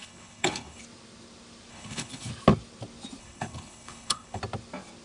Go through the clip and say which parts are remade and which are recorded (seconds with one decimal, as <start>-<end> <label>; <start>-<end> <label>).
0.0-0.8 remade; 0.8-1.7 recorded; 1.7-2.3 remade; 2.3-3.2 recorded; 3.2-4.4 remade; 4.4-5.0 recorded